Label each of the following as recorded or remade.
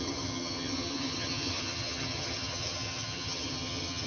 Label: remade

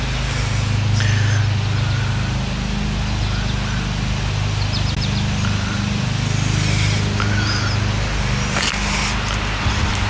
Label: recorded